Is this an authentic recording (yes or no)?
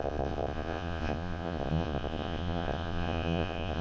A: no